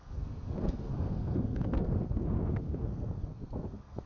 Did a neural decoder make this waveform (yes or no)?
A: yes